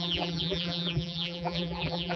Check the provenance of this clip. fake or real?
fake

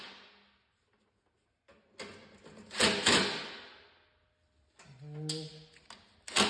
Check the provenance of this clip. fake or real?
real